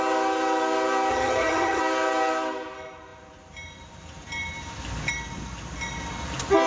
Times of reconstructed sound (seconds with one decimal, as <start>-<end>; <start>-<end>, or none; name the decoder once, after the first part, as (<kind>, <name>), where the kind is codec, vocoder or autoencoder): 1.1-1.8 (vocoder, HiFi-GAN)